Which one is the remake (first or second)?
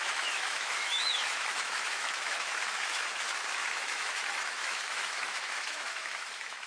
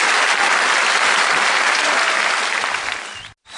first